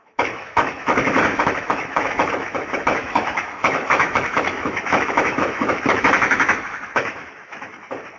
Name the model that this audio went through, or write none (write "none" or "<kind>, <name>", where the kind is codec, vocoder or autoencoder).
autoencoder, DAC-VAE